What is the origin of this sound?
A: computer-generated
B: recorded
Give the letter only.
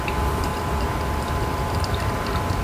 A